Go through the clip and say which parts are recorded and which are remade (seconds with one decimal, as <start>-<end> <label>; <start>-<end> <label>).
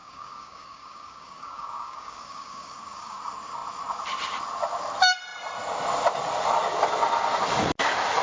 0.0-3.2 remade; 3.2-8.2 recorded